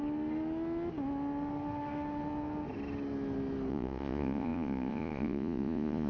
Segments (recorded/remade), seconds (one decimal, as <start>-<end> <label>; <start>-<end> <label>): 0.0-3.7 recorded; 3.7-6.1 remade